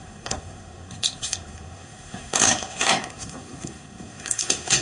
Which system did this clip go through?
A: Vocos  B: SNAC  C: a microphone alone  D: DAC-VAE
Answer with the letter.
B